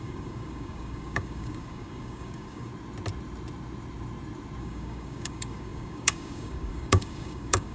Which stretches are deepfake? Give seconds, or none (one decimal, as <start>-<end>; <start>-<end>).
0.0-2.7; 4.6-7.7